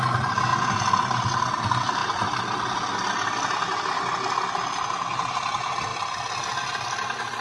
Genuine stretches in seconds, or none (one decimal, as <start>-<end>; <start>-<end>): 0.0-7.4